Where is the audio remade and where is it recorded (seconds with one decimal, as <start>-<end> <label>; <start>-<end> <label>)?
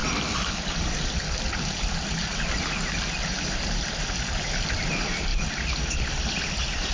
0.0-6.9 recorded